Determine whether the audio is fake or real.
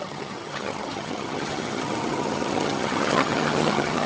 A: fake